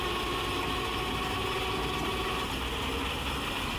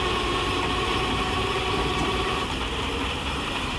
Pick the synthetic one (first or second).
second